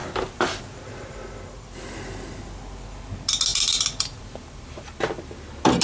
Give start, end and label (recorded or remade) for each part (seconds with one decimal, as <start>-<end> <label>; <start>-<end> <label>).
0.0-3.5 recorded; 3.5-4.2 remade; 4.2-5.8 recorded